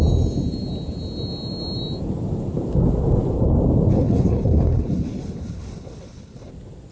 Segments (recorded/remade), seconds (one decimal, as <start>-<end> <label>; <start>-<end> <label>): 0.0-3.9 recorded; 3.9-6.5 remade; 6.5-6.9 recorded